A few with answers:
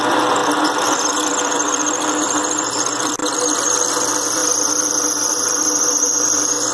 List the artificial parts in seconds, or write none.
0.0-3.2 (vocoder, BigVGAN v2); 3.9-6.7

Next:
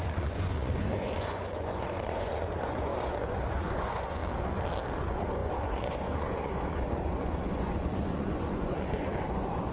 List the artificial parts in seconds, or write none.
0.0-4.2 (vocoder, Vocos); 5.0-9.7

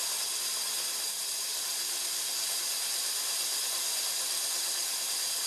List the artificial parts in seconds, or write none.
none

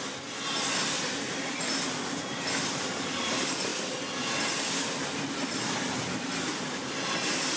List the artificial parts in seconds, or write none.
none